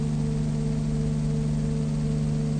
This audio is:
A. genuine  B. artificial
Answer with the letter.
A